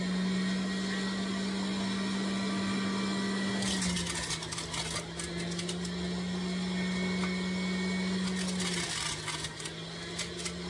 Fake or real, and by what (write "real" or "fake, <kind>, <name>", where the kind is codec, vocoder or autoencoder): real